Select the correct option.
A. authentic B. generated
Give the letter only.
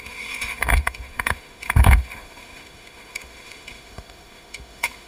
B